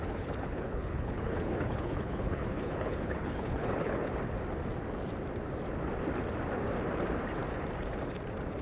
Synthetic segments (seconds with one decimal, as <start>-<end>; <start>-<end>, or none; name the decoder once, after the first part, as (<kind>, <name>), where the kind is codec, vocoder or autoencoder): 0.0-4.1 (codec, HILCodec)